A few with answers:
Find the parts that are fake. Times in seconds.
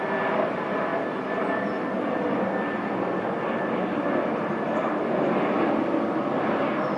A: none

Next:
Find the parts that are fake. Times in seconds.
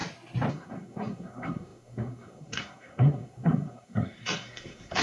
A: 0.5-5.0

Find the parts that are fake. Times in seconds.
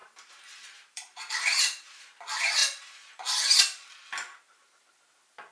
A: 0.0-2.2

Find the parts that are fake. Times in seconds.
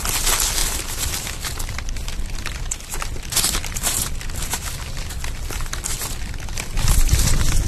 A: none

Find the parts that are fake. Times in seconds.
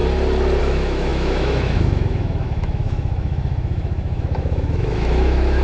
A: 0.6-5.6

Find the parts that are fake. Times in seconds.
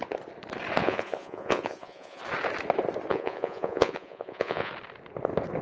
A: 0.8-2.2; 3.1-4.7